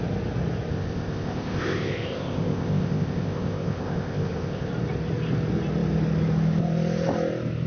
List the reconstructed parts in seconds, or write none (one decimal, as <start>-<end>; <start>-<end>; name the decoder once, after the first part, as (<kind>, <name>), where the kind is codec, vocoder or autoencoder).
0.7-4.7 (codec, ZipCodec)